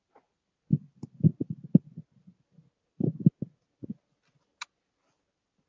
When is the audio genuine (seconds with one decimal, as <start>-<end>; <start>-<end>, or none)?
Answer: 0.0-5.7